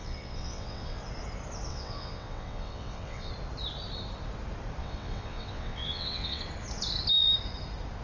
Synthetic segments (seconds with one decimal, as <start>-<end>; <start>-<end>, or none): 0.0-1.0; 1.7-3.3; 4.8-6.4